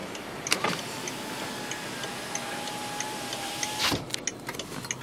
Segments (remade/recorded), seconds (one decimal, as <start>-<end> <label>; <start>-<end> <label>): 0.0-0.8 remade; 0.8-5.0 recorded